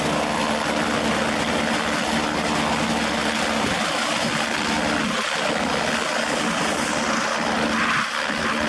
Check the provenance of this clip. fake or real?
real